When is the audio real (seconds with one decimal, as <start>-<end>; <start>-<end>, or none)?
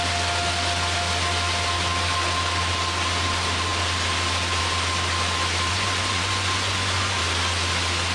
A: 0.0-5.7; 7.2-8.1